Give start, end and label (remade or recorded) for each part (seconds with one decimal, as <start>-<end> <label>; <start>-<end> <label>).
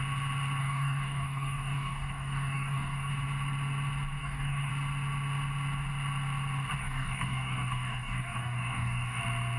0.0-0.6 recorded; 0.6-3.1 remade; 3.1-4.2 recorded; 4.2-4.7 remade; 4.7-6.8 recorded; 6.8-9.2 remade; 9.2-9.6 recorded